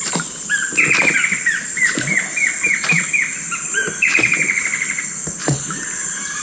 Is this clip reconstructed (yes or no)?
no